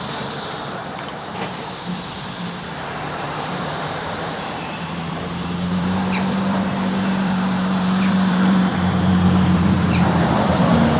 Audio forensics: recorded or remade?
remade